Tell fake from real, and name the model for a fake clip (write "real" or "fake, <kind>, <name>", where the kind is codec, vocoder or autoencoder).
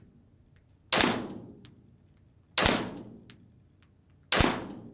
real